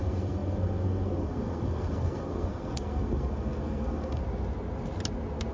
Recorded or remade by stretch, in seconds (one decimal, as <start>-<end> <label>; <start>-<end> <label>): 0.0-4.2 remade; 4.2-5.5 recorded